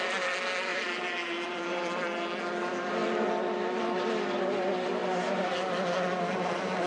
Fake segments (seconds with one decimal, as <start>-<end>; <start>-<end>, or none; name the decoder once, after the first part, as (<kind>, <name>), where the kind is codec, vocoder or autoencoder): 0.7-2.4 (vocoder, BigVGAN v2); 5.0-5.5